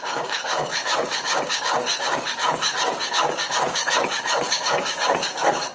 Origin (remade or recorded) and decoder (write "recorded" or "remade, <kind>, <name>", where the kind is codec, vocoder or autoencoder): remade, codec, DAC